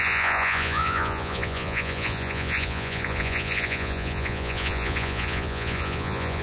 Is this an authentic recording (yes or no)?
no